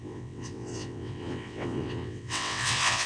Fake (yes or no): yes